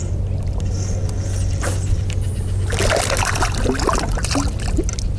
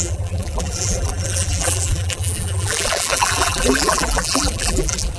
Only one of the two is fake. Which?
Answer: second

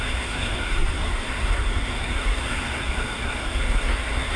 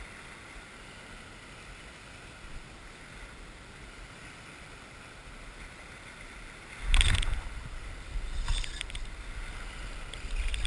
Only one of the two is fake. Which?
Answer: first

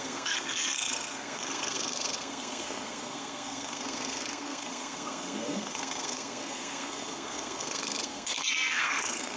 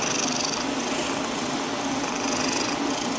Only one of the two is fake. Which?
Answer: first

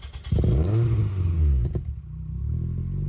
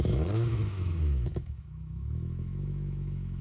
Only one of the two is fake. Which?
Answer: second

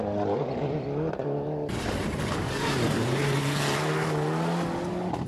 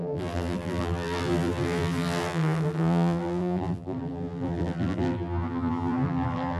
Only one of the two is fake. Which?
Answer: second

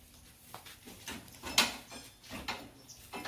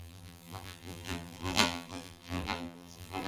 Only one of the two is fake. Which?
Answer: second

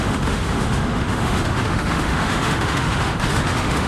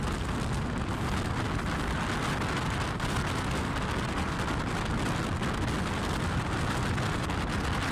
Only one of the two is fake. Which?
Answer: first